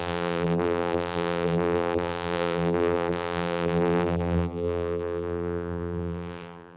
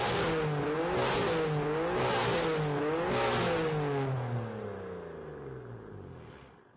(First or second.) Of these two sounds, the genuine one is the second